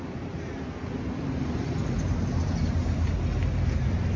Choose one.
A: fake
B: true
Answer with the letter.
B